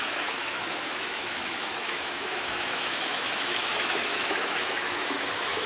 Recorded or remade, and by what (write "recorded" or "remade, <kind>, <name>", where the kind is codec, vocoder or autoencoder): remade, autoencoder, DAC-VAE